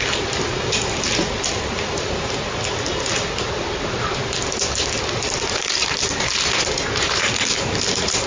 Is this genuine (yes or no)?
yes